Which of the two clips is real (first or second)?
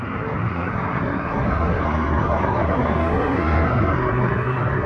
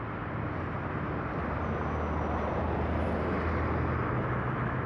second